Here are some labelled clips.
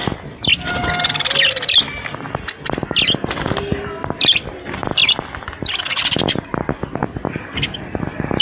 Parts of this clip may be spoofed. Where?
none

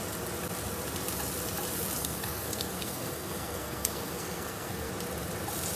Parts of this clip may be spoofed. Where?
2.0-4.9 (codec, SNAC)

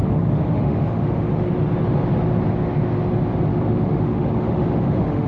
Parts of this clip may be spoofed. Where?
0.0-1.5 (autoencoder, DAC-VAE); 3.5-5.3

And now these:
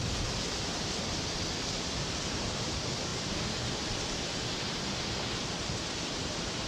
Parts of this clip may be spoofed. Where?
none